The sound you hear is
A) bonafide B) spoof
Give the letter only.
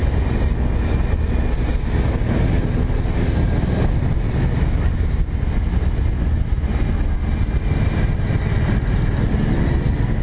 A